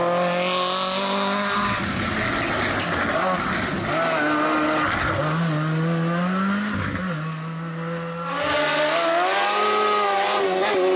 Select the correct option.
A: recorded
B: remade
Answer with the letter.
A